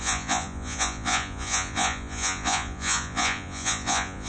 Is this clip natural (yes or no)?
no